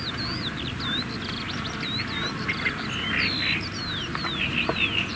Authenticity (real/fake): real